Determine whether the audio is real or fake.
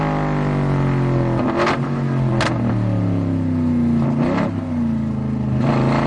real